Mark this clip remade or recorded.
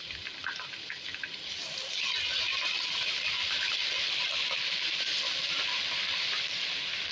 recorded